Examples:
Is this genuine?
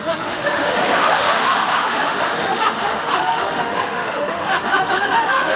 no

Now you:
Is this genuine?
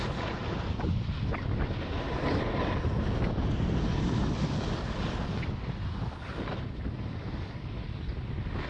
yes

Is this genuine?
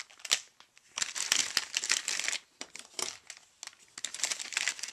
yes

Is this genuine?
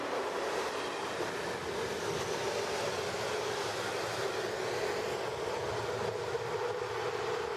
yes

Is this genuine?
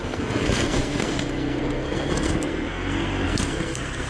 no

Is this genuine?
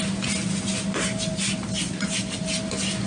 yes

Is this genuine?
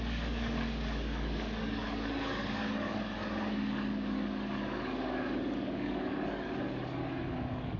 no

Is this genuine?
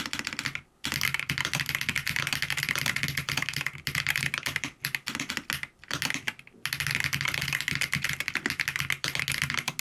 yes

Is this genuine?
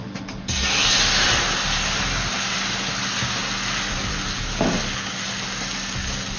yes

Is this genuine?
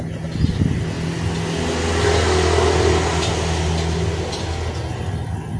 yes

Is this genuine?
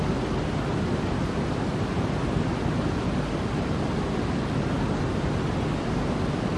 yes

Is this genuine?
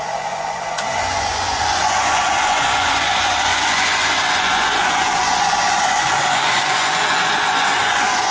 no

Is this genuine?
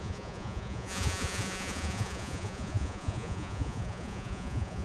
no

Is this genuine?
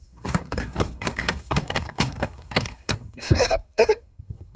no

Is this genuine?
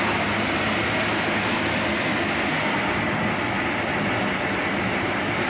yes